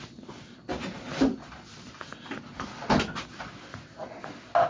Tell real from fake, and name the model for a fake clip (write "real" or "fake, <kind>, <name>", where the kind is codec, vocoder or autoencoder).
real